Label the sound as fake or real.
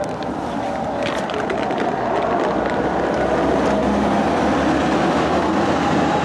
real